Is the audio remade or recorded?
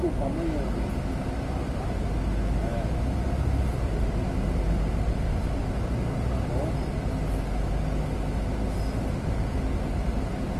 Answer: recorded